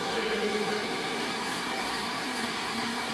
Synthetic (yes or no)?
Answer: yes